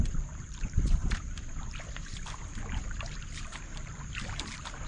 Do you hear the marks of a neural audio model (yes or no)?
yes